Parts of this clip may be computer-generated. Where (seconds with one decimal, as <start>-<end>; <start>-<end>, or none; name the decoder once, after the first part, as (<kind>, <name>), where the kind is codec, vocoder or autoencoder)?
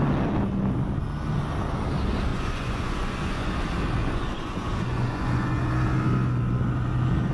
2.3-3.5 (vocoder, Vocos); 4.0-5.7